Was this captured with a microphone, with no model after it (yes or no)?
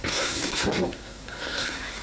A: no